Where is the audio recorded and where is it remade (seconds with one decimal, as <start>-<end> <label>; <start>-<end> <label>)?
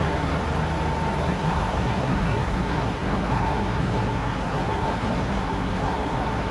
0.0-0.4 remade; 0.4-1.2 recorded; 1.2-6.5 remade